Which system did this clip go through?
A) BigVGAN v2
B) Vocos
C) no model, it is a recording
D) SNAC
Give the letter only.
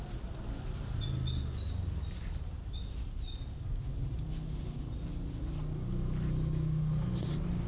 C